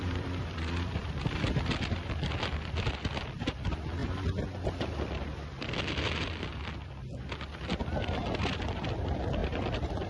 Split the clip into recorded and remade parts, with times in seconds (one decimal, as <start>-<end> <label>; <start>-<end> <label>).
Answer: 0.0-4.0 remade; 4.0-8.4 recorded; 8.4-10.1 remade